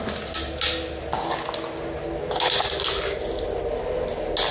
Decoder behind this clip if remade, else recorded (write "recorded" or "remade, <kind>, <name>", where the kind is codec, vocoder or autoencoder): recorded